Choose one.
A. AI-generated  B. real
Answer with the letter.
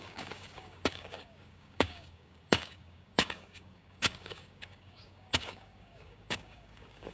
A